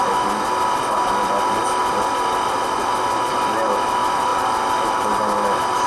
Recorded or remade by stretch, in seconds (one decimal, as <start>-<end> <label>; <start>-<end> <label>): 0.0-5.9 recorded